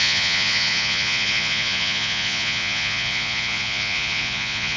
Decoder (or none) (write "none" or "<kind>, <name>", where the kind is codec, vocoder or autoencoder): vocoder, Vocos